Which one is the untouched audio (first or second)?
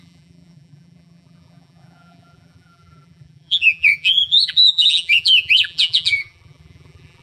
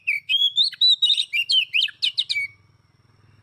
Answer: second